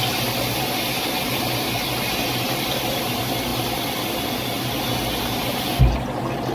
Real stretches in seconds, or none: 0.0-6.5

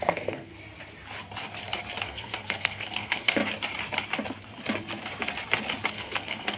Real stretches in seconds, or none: 0.5-2.0; 3.4-5.9